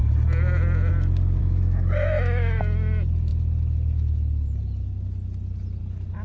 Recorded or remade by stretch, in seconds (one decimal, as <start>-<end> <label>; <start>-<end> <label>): 0.0-1.4 recorded; 1.4-2.6 remade; 2.6-6.2 recorded